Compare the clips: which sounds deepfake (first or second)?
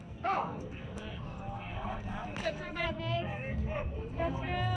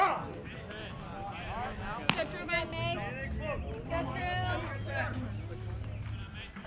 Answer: first